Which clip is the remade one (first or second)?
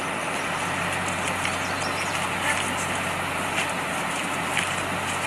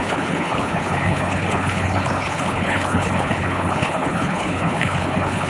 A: second